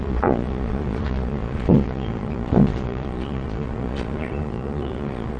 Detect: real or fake fake